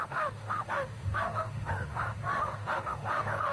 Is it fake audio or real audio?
fake